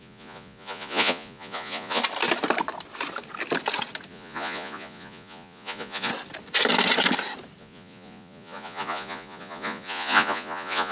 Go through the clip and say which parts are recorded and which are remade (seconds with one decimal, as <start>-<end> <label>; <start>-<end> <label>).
0.0-2.0 remade; 2.0-4.1 recorded; 4.1-6.1 remade; 6.1-7.6 recorded; 7.6-10.9 remade